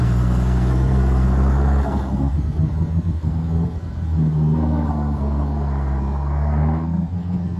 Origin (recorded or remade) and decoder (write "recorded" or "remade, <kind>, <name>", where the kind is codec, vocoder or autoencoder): remade, codec, SNAC